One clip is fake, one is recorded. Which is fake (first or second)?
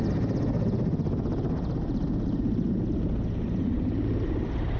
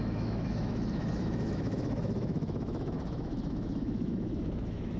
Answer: second